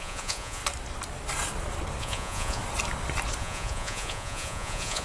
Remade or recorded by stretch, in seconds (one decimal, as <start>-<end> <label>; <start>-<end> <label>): 0.0-0.6 remade; 0.6-2.0 recorded; 2.0-2.6 remade; 2.6-3.4 recorded; 3.4-5.0 remade